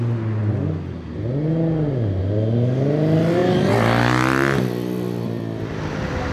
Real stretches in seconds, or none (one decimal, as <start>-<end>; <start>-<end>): 0.0-6.3